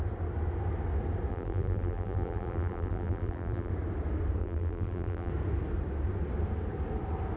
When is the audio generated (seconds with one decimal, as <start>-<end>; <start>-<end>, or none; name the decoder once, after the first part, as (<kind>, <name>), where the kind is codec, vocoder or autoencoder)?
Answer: 1.3-3.7 (vocoder, BigVGAN v2); 4.4-5.3